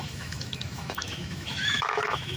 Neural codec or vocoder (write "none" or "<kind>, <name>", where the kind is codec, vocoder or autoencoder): autoencoder, DAC-VAE